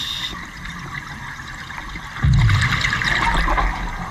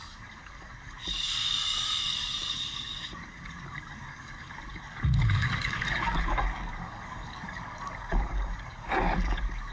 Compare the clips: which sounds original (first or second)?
first